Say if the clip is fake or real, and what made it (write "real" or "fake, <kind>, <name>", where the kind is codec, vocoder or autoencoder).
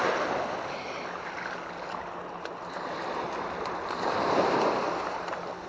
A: real